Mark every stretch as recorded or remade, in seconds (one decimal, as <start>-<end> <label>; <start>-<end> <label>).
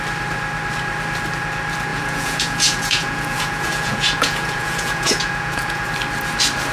0.0-1.9 recorded; 1.9-5.9 remade; 5.9-6.7 recorded